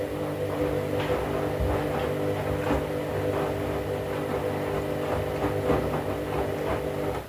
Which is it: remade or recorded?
recorded